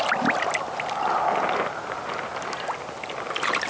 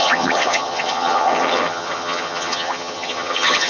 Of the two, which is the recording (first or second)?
first